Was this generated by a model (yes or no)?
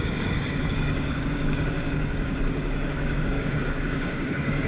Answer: yes